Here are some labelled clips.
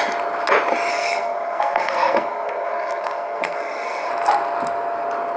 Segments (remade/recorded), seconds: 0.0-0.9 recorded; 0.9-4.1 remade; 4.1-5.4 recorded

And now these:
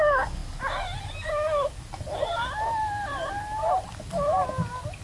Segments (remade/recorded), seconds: 0.0-5.0 recorded

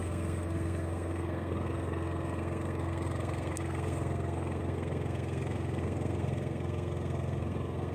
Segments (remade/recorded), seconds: 0.0-7.9 remade

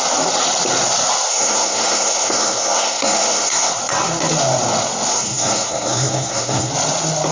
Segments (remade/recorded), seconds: 0.0-1.3 recorded; 1.3-3.7 remade; 3.7-5.1 recorded; 5.1-6.7 remade; 6.7-7.3 recorded

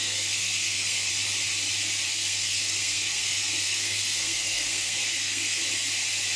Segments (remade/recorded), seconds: 0.0-1.1 remade; 1.1-2.1 recorded; 2.1-5.6 remade; 5.6-6.4 recorded

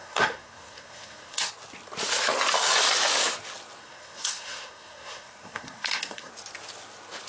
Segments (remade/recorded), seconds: 0.0-1.5 remade; 1.5-3.8 recorded; 3.8-6.3 remade; 6.3-7.3 recorded

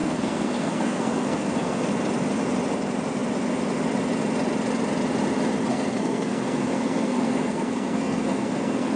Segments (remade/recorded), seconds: 0.0-1.9 remade; 1.9-5.7 recorded; 5.7-9.0 remade

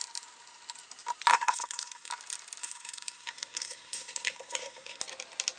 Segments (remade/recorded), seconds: 0.0-1.3 recorded; 1.3-2.1 remade; 2.1-2.6 recorded; 2.6-5.0 remade; 5.0-5.6 recorded